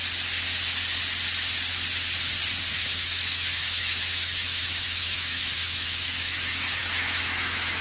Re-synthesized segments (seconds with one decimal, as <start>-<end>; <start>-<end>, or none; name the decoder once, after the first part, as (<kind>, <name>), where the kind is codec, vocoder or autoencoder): 2.7-7.8 (autoencoder, DAC-VAE)